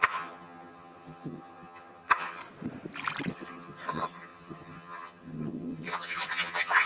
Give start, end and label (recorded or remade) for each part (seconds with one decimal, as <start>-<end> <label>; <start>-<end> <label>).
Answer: 0.0-2.4 remade; 2.4-3.3 recorded; 3.3-6.9 remade